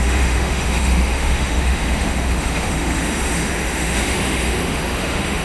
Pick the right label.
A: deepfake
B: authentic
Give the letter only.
A